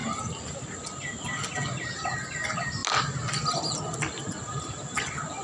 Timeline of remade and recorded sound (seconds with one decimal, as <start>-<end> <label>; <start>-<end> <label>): 0.0-5.4 recorded